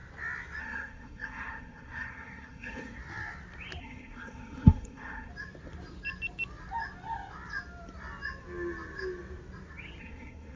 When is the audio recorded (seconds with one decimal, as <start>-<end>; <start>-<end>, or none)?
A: 0.0-0.6; 3.0-3.8; 5.3-10.0